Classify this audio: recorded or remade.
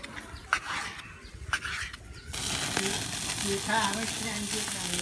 recorded